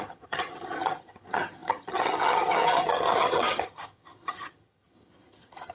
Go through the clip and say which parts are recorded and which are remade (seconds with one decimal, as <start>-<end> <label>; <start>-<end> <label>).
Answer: 0.0-5.7 remade

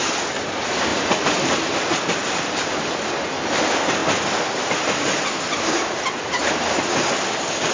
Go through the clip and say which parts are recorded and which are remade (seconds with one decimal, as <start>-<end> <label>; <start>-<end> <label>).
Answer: 0.0-0.9 recorded; 0.9-2.7 remade; 2.7-4.0 recorded; 4.0-7.1 remade; 7.1-7.7 recorded

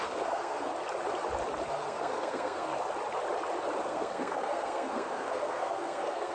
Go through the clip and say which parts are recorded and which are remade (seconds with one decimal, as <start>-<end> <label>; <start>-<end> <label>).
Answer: 0.0-0.7 remade; 0.7-1.7 recorded; 1.7-2.7 remade; 2.7-3.8 recorded; 3.8-6.3 remade

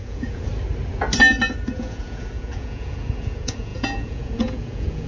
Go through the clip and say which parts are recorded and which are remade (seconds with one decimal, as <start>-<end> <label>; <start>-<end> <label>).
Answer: 0.0-0.5 remade; 0.5-1.7 recorded; 1.7-5.1 remade

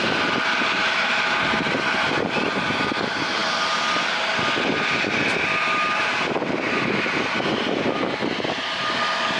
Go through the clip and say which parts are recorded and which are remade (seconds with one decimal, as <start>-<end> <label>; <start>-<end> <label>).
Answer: 0.0-9.4 recorded

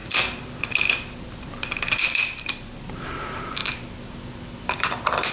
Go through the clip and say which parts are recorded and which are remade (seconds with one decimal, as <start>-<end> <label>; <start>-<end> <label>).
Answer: 0.0-3.6 remade; 3.6-4.8 recorded; 4.8-5.3 remade

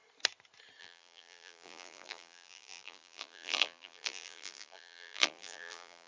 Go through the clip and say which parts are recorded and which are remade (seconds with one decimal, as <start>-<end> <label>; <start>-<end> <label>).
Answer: 0.0-0.8 recorded; 0.8-6.1 remade